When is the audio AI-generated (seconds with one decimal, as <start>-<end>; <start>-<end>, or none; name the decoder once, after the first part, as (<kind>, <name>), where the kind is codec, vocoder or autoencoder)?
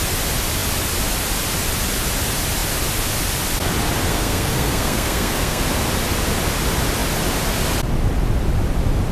4.1-5.6 (codec, SNAC)